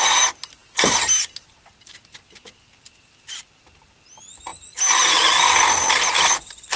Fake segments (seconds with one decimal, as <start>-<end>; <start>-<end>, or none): none

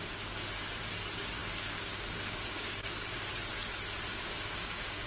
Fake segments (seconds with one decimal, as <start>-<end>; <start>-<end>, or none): 1.4-3.2; 4.1-5.1

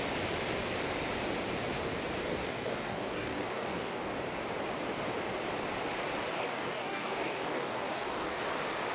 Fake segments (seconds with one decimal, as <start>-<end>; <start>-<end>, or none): 2.3-4.1; 6.3-8.4

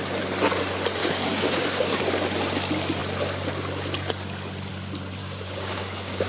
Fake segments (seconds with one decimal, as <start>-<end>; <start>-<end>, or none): 1.0-2.0; 5.2-6.3

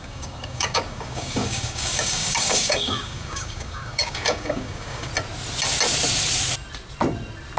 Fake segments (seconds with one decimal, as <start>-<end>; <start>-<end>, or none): 0.0-5.1

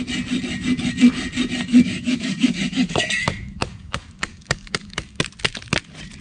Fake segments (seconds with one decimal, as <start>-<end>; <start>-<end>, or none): 1.7-5.2

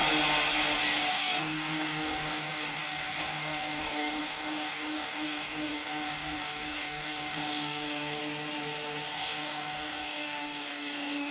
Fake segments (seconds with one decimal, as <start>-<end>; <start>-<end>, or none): 1.1-8.2; 9.1-11.3

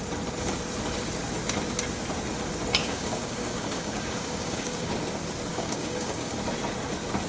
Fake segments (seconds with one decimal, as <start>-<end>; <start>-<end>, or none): 2.8-4.9; 5.5-6.3